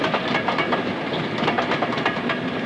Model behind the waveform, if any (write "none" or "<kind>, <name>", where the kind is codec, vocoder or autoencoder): none